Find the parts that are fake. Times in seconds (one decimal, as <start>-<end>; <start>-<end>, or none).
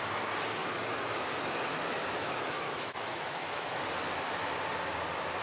0.6-3.8